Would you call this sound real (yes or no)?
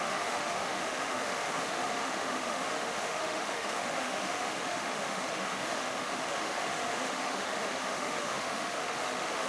no